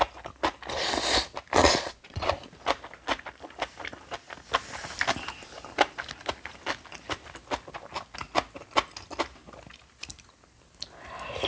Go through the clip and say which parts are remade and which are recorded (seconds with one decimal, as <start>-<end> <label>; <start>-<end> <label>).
0.0-1.6 recorded; 1.6-2.3 remade; 2.3-11.5 recorded